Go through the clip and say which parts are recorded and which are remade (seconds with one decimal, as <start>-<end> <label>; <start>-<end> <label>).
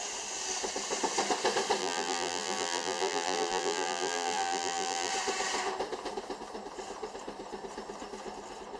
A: 0.0-1.8 recorded; 1.8-5.1 remade; 5.1-8.8 recorded